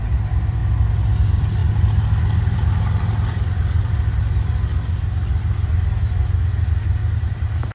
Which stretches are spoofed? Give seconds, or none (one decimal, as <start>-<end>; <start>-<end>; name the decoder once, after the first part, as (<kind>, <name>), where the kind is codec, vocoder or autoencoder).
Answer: 0.0-0.6 (vocoder, BigVGAN v2); 1.1-1.6; 2.2-4.7; 7.1-7.7

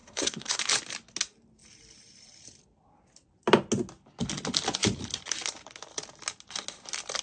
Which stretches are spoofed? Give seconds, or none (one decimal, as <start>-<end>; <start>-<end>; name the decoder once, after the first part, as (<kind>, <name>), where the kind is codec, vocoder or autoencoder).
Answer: 0.0-0.6 (codec, SNAC)

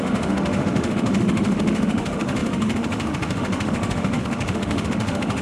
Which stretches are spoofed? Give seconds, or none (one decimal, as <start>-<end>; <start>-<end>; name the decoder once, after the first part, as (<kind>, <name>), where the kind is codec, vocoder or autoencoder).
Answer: 0.0-5.4 (autoencoder, DAC-VAE)

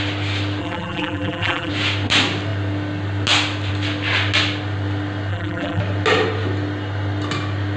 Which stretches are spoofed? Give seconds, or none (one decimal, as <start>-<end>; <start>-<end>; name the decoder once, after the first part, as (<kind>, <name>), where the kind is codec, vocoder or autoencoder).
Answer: 0.6-1.7 (vocoder, BigVGAN v2); 5.3-5.8

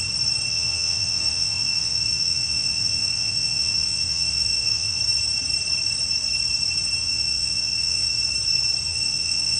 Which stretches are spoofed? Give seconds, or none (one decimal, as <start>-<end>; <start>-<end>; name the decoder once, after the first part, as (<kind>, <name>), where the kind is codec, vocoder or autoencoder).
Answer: 0.5-5.0 (vocoder, WaveNeXt); 7.0-8.2; 8.9-9.6

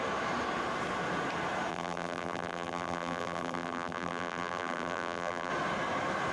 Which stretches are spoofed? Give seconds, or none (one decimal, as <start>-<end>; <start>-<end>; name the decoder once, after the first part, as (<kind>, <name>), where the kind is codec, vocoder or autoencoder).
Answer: 1.7-5.5 (vocoder, BigVGAN v2)

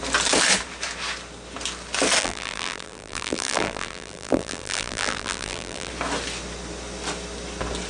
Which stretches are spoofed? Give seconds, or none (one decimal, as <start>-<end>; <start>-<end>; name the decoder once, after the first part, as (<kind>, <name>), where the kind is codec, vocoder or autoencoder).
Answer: 2.2-5.9 (vocoder, BigVGAN v2)

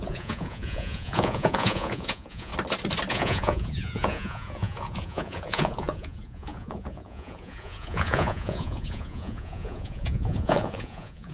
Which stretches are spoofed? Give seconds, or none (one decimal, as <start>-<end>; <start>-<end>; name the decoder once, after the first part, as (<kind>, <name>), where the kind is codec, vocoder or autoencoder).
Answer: 0.0-2.5 (vocoder, Vocos); 3.1-11.3